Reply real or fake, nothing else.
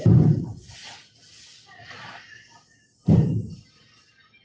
real